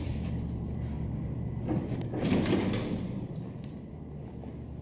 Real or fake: fake